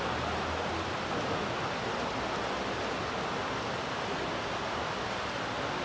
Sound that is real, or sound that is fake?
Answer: real